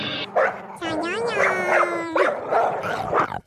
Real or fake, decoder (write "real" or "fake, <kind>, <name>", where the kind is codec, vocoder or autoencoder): fake, vocoder, BigVGAN v2